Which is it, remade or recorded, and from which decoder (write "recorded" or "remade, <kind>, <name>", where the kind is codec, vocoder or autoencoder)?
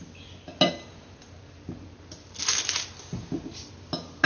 recorded